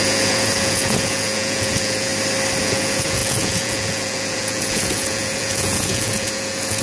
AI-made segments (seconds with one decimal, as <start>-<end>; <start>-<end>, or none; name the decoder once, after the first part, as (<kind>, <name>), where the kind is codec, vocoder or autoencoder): 0.0-2.1 (vocoder, Vocos); 2.6-6.8